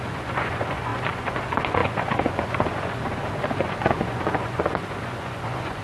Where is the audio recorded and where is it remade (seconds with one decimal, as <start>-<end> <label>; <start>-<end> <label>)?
0.0-5.8 remade